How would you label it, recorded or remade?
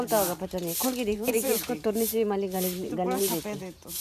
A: remade